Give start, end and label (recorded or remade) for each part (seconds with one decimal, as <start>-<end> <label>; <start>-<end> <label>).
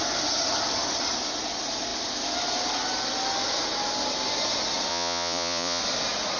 0.0-4.9 recorded; 4.9-5.8 remade; 5.8-6.4 recorded